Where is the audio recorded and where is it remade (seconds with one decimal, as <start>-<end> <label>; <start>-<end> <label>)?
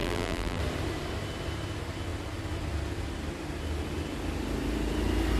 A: 0.0-0.6 remade; 0.6-5.4 recorded